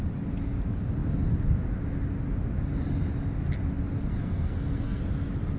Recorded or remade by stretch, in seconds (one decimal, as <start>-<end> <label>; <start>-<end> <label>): 0.0-4.1 recorded; 4.1-5.0 remade; 5.0-5.6 recorded